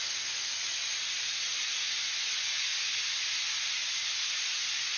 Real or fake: real